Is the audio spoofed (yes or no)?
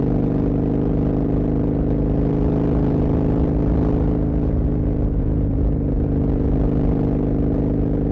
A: no